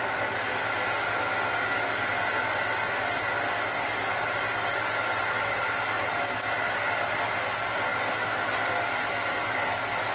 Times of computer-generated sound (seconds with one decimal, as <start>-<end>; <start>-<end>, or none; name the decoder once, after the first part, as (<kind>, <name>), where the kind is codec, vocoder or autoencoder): none